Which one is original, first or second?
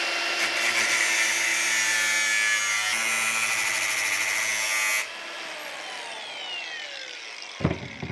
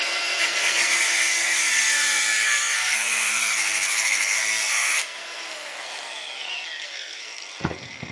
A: first